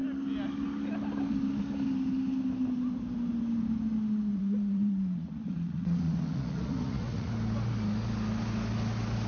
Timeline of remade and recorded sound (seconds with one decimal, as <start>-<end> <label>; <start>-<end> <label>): 0.0-4.3 recorded; 4.3-7.3 remade; 7.3-9.3 recorded